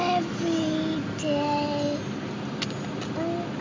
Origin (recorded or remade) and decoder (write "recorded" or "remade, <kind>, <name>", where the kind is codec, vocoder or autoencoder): recorded